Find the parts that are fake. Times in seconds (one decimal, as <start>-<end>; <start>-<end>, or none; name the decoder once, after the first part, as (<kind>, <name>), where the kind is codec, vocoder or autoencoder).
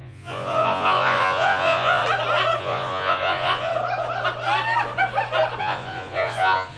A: 0.0-2.0 (vocoder, Vocos); 2.6-3.7; 5.6-6.8